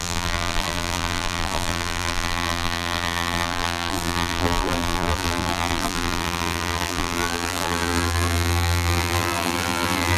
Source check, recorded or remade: remade